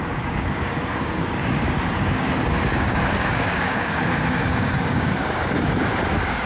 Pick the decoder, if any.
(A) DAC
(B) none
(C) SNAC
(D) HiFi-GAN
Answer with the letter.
A